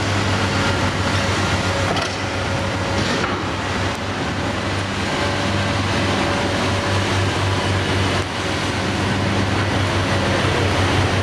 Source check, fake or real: real